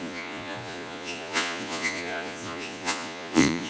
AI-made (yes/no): yes